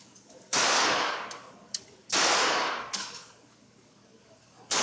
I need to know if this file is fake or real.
fake